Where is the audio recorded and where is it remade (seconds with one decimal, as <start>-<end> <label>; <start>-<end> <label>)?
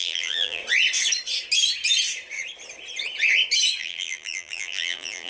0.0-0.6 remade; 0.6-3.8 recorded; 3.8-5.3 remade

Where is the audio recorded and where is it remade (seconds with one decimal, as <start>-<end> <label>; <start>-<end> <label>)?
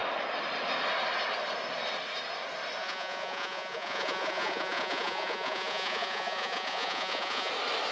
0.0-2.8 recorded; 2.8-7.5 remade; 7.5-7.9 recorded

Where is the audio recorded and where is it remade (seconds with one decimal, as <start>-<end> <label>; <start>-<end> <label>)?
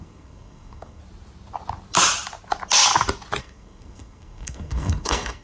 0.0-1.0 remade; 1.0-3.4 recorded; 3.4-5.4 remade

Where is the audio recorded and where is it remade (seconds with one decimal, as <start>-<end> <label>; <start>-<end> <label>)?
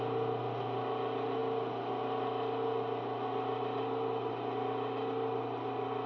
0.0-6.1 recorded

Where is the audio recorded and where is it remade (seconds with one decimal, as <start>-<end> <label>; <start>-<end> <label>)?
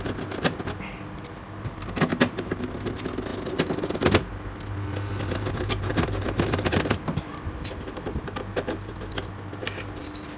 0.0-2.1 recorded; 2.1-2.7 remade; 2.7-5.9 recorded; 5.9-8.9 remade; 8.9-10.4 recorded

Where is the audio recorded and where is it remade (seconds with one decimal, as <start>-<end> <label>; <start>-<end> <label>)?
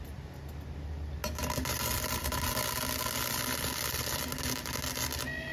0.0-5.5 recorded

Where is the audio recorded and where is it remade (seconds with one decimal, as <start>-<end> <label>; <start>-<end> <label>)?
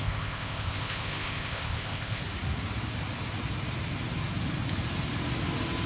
0.0-2.2 remade; 2.2-5.9 recorded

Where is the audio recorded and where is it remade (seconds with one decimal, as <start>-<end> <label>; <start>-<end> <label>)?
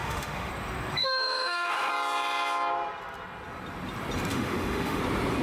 0.0-0.5 remade; 0.5-1.0 recorded; 1.0-1.9 remade; 1.9-4.3 recorded; 4.3-5.0 remade; 5.0-5.4 recorded